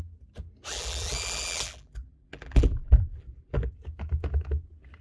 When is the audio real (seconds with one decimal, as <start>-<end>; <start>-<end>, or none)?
0.0-0.7; 3.7-5.0

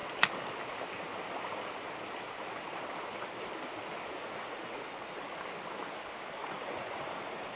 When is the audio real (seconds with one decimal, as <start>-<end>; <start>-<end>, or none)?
0.0-4.2; 5.2-6.4

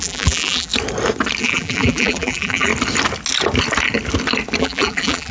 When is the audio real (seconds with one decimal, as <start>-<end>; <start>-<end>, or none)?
0.7-1.4; 2.7-4.6

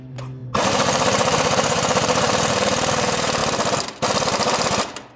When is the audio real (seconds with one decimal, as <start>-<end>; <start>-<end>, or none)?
3.4-5.2

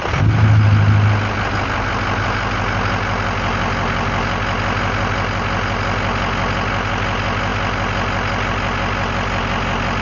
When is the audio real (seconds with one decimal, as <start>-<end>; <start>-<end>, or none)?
0.0-10.0

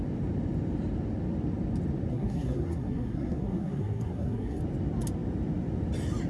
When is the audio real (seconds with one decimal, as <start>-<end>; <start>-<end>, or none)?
0.0-2.1; 4.6-6.3